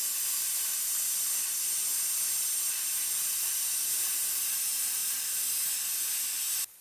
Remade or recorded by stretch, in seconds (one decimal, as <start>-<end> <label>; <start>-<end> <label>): 0.0-6.8 recorded